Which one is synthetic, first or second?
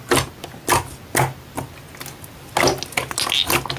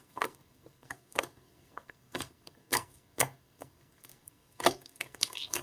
second